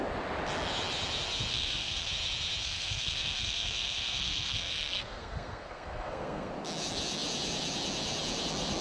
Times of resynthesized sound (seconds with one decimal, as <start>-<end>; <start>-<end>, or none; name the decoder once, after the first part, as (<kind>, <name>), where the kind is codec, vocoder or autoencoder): 1.5-2.1 (codec, SNAC); 2.6-6.5